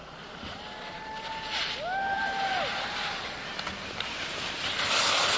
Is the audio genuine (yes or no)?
yes